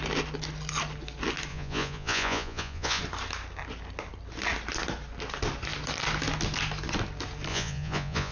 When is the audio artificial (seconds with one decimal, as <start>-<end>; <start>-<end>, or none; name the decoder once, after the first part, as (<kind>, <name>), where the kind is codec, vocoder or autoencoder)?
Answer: 1.5-3.0 (vocoder, Vocos); 7.5-8.3

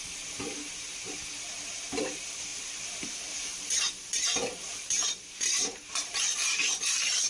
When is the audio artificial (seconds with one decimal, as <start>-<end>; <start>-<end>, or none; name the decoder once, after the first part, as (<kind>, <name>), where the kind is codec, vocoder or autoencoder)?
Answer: 0.0-7.3 (vocoder, BigVGAN v2)

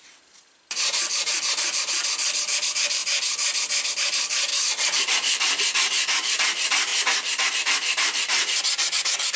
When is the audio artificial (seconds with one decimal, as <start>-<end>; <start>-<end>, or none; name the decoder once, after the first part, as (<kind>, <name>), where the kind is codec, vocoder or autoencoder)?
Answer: 0.0-3.0 (vocoder, BigVGAN v2); 3.9-4.5; 5.0-6.9; 7.5-9.4

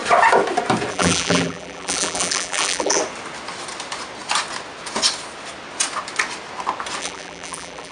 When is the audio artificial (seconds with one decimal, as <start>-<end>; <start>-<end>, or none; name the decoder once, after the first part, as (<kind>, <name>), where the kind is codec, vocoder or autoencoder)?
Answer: 0.9-3.0 (vocoder, BigVGAN v2); 7.0-7.9

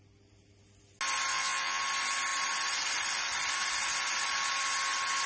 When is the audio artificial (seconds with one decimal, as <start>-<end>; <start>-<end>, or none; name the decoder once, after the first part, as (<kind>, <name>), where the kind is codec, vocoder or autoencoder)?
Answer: 1.3-1.8 (vocoder, Vocos)

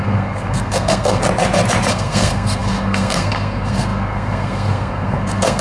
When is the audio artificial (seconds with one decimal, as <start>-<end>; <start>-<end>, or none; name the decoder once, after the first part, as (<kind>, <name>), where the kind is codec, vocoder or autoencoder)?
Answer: 0.0-1.2 (codec, SNAC); 1.9-5.6

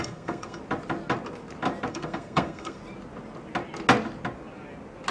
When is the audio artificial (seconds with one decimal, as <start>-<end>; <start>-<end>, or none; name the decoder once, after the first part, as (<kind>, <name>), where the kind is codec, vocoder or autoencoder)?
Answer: 0.0-0.6 (codec, SNAC); 1.9-2.8

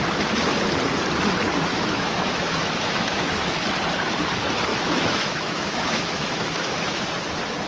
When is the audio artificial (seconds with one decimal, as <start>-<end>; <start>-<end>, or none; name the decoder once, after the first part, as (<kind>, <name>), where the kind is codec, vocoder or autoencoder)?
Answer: 1.7-3.5 (autoencoder, DAC-VAE); 4.7-7.1